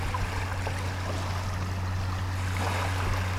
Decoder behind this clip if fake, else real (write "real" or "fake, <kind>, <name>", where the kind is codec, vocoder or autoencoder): real